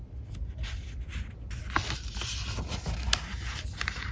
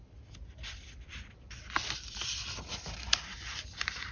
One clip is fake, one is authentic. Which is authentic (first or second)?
first